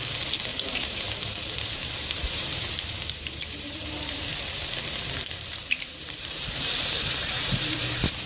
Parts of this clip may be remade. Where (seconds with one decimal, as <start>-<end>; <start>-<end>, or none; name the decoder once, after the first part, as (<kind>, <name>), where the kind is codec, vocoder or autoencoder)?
0.5-4.2 (vocoder, BigVGAN v2); 5.6-8.3